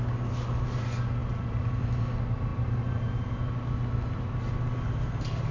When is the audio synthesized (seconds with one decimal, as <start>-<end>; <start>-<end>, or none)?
none